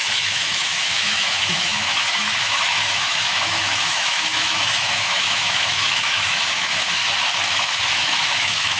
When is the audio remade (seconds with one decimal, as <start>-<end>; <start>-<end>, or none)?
0.0-7.0; 7.5-8.8